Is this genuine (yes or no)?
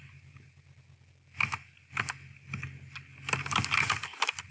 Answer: yes